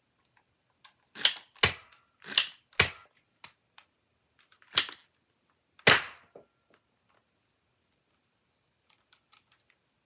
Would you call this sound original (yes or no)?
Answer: yes